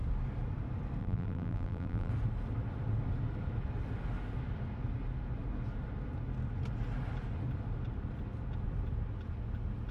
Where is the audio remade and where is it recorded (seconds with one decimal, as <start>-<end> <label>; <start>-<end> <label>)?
0.0-1.0 recorded; 1.0-2.1 remade; 2.1-9.9 recorded